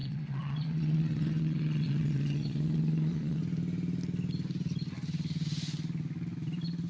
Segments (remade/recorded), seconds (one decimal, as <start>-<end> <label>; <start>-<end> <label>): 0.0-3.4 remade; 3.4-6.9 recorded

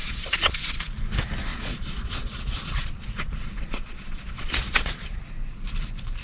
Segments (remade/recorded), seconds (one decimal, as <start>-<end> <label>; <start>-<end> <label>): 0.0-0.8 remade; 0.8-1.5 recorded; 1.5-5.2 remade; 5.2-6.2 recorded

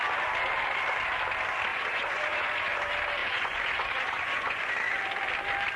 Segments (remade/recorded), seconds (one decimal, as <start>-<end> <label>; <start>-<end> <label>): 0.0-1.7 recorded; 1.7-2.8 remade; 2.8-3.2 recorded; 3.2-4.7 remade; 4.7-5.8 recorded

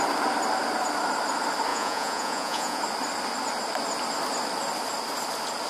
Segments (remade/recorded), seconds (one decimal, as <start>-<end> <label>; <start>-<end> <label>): 0.0-1.7 recorded; 1.7-2.8 remade; 2.8-5.7 recorded

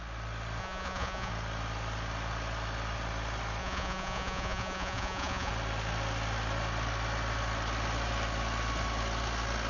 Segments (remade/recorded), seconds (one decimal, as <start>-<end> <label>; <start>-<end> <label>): 0.0-0.6 recorded; 0.6-1.3 remade; 1.3-3.6 recorded; 3.6-5.5 remade; 5.5-9.7 recorded

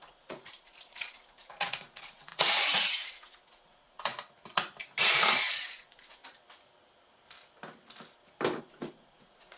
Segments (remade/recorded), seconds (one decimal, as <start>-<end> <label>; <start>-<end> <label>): 0.0-4.1 remade; 4.1-5.3 recorded; 5.3-6.2 remade; 6.2-8.6 recorded; 8.6-9.6 remade

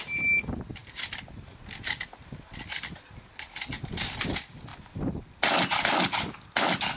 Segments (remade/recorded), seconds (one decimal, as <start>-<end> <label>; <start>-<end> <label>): 0.0-7.0 recorded